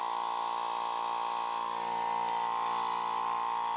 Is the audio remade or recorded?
recorded